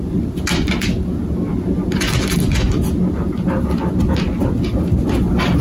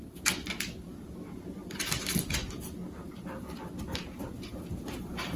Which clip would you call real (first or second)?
first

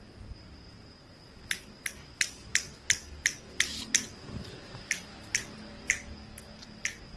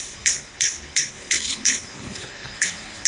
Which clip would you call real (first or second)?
first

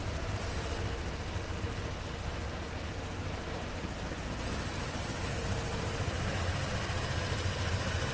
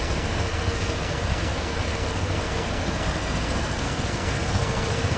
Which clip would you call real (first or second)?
first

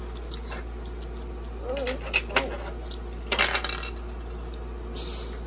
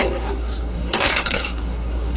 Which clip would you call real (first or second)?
first